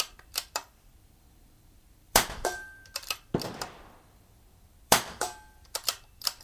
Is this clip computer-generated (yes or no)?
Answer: yes